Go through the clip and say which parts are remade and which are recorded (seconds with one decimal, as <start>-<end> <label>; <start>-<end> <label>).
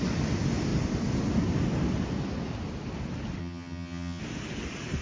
0.0-3.4 recorded; 3.4-4.2 remade; 4.2-5.0 recorded